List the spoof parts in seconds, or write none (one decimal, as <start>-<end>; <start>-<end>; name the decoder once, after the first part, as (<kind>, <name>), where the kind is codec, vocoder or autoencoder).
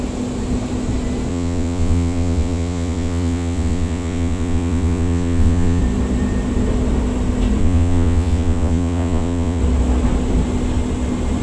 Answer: 1.3-5.8 (vocoder, Vocos); 7.6-9.6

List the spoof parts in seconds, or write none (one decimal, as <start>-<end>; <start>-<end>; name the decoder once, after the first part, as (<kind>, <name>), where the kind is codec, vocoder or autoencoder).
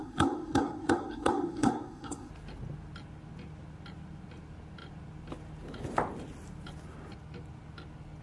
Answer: 0.0-2.3 (codec, SNAC)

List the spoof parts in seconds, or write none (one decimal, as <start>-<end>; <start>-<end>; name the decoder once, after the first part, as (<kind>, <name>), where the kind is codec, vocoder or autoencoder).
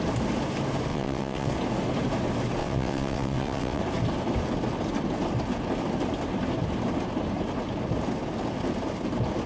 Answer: 0.9-1.5 (vocoder, WaveNeXt); 2.6-3.8